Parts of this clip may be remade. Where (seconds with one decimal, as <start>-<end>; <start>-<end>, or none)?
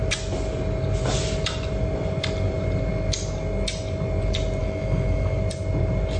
4.6-5.4